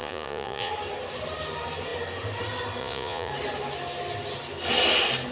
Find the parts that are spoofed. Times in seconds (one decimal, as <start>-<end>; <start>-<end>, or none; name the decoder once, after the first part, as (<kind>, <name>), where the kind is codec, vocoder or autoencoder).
0.0-0.7 (vocoder, Vocos); 2.8-3.3